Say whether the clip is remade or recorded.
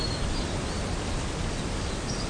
recorded